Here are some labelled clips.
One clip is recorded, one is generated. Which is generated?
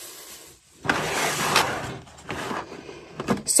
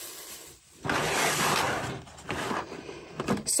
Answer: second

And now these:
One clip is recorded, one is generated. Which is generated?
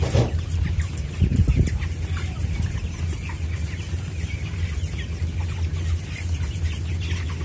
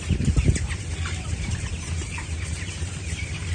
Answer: second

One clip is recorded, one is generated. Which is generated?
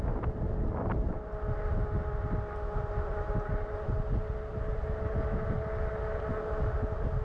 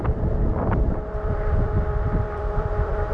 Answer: second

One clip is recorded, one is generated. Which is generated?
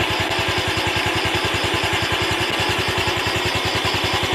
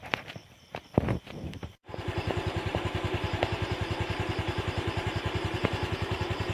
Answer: second